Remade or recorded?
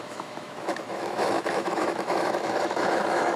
remade